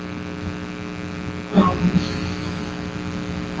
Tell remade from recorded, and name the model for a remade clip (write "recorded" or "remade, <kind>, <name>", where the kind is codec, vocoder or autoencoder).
remade, autoencoder, DAC-VAE